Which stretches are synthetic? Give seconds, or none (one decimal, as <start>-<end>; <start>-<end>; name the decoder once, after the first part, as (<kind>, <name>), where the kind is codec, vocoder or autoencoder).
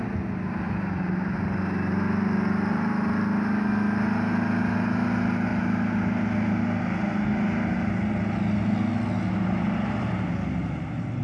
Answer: none